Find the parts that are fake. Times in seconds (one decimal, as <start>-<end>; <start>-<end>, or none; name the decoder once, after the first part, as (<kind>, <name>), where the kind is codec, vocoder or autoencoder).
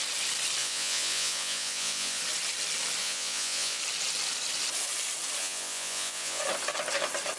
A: 0.6-2.2 (vocoder, Vocos); 3.0-3.8; 5.4-6.4